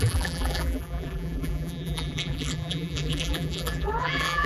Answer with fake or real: fake